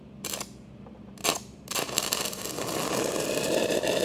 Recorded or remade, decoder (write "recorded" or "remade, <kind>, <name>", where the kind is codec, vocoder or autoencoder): remade, vocoder, BigVGAN v2